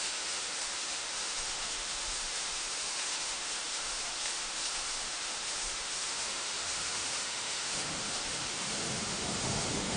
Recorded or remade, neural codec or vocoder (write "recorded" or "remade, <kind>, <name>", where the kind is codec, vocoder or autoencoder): remade, autoencoder, DAC-VAE